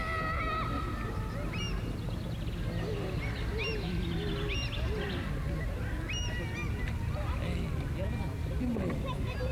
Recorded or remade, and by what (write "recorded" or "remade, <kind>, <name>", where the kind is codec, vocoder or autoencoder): recorded